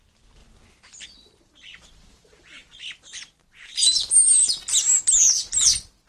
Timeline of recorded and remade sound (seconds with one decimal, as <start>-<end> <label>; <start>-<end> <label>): 0.0-0.4 recorded; 0.4-4.1 remade; 4.1-6.1 recorded